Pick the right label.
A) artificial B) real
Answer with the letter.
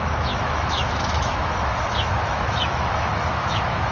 A